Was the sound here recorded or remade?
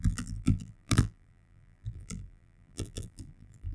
remade